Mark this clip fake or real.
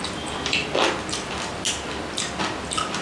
real